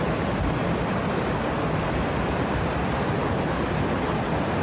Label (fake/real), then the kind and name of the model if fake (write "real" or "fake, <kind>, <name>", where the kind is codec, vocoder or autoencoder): real